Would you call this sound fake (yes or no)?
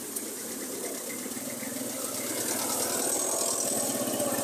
no